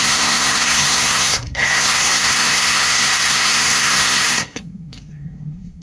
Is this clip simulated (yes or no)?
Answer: yes